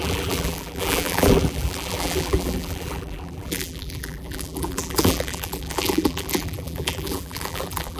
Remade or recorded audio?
remade